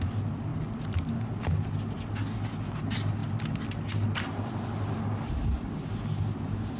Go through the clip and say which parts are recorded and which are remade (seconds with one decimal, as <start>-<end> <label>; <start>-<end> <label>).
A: 0.0-6.8 recorded